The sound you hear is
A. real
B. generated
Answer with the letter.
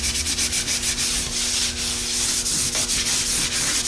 A